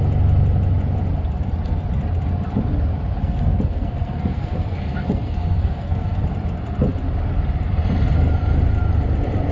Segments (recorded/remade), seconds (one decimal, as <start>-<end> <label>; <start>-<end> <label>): 0.0-3.2 recorded; 3.2-6.2 remade; 6.2-9.5 recorded